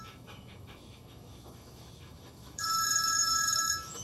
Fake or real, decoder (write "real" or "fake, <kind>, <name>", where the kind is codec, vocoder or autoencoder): fake, autoencoder, DAC-VAE